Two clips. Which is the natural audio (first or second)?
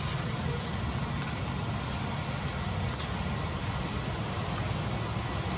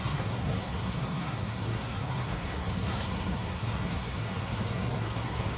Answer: first